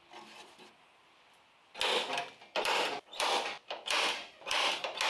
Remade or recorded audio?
recorded